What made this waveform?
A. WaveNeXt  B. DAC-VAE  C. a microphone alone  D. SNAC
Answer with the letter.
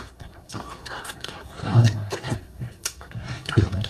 D